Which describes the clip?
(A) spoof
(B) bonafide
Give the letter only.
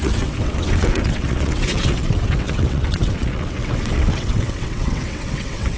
A